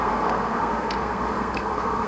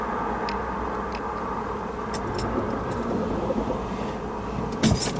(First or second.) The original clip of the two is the second